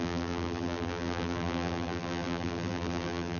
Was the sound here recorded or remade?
remade